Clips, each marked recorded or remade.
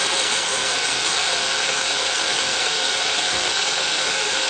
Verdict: remade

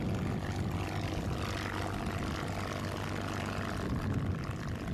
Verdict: recorded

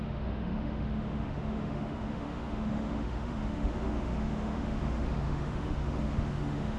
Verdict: remade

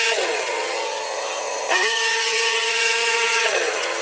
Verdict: remade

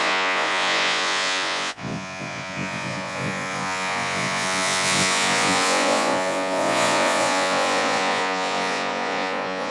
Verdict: remade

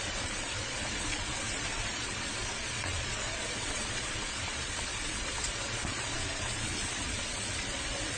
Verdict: remade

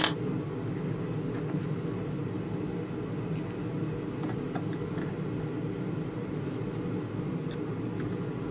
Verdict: recorded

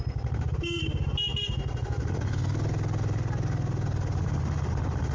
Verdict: recorded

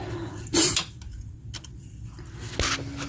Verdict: recorded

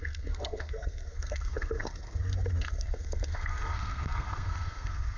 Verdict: remade